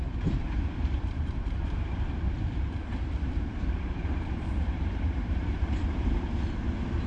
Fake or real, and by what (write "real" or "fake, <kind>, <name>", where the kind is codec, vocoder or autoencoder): fake, vocoder, BigVGAN v2